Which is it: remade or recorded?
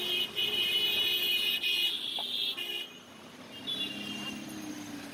recorded